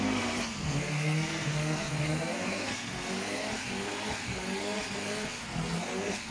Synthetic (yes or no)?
yes